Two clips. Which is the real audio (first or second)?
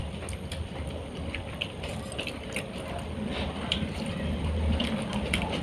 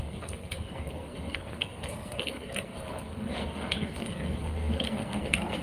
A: first